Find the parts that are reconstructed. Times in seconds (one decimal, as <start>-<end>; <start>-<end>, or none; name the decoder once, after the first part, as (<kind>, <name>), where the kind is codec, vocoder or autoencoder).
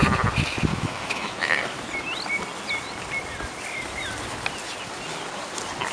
0.7-1.6 (autoencoder, DAC-VAE)